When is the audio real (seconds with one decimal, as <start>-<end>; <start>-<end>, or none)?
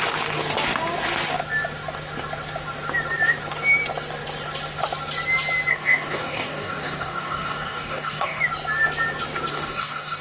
0.0-5.7; 8.4-9.5